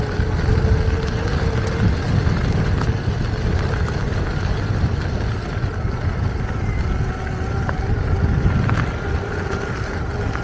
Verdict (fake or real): real